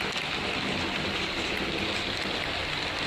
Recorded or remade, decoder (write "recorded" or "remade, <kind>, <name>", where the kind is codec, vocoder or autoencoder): recorded